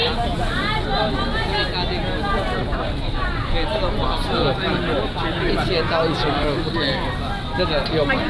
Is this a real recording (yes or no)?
yes